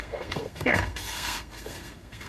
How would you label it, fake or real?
fake